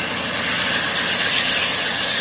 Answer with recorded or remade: recorded